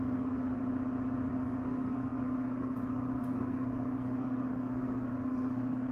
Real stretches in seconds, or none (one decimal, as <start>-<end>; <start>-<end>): 0.6-1.3